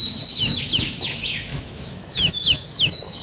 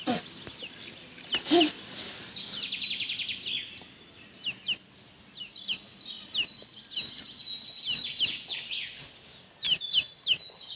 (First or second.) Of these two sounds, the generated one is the first